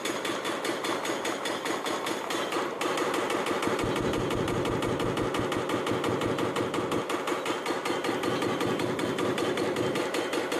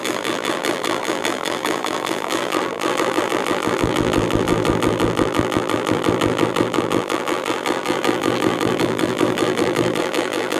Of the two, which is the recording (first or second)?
first